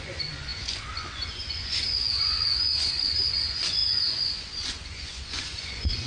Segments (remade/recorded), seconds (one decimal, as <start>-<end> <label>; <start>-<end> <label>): 0.0-6.1 remade